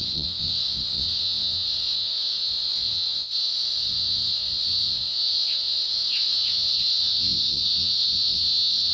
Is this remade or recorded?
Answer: remade